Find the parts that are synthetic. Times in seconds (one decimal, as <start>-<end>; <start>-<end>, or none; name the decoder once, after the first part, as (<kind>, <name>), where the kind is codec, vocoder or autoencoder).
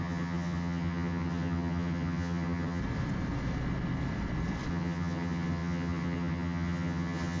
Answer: 0.0-2.8 (vocoder, HiFi-GAN); 4.7-7.4